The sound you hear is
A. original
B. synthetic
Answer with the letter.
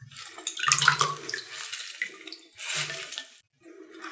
A